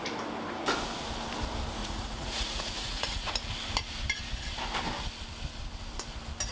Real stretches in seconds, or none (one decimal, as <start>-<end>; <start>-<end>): 0.0-1.8; 3.3-6.5